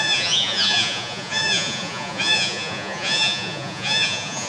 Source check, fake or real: fake